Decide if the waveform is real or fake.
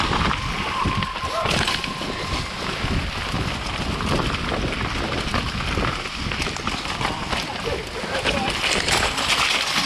real